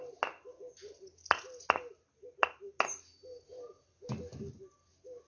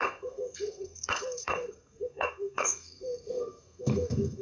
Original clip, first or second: first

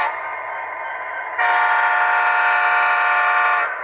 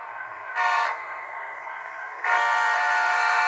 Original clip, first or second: first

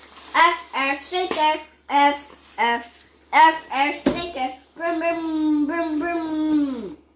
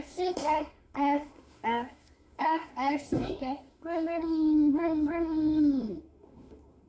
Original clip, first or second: first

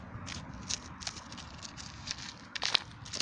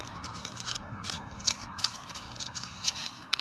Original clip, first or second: first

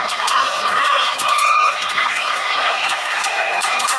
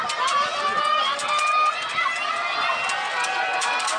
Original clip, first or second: second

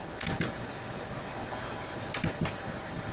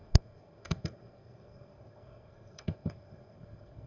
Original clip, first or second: first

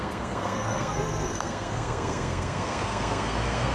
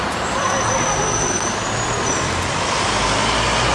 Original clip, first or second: second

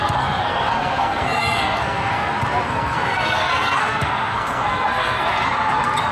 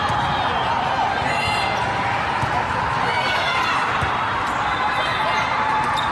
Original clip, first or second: second